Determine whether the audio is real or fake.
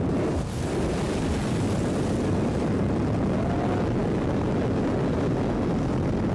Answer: real